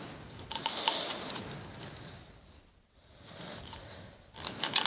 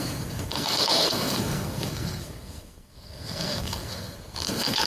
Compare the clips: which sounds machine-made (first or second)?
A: second